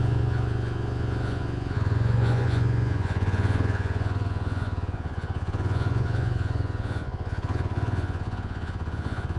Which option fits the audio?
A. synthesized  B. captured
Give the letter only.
A